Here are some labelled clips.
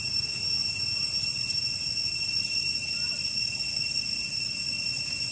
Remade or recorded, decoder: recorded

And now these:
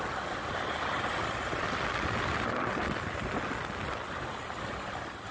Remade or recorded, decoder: recorded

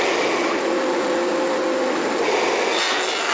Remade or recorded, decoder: recorded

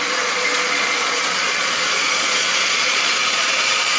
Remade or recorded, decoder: remade, vocoder, Vocos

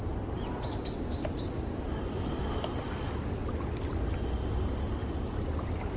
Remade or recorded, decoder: recorded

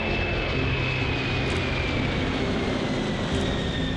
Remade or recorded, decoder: recorded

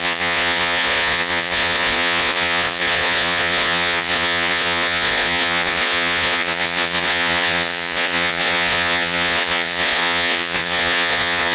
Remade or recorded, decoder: remade, vocoder, Vocos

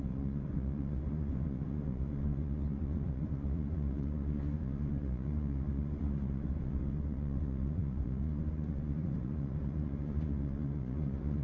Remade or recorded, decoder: remade, vocoder, Vocos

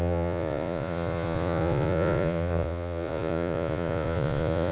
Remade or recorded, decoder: remade, vocoder, Vocos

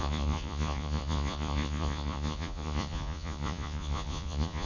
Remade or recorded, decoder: remade, vocoder, Vocos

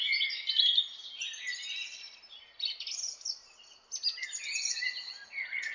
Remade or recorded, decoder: recorded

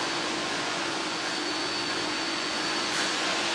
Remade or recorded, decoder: remade, vocoder, Vocos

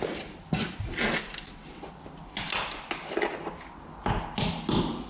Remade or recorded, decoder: recorded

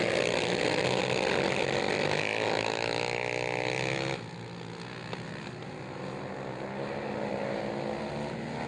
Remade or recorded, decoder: recorded